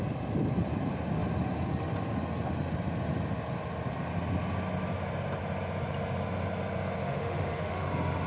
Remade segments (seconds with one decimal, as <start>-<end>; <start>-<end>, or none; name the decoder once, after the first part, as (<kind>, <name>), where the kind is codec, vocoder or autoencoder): 7.0-7.9 (autoencoder, DAC-VAE)